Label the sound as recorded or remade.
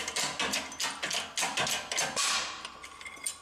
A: recorded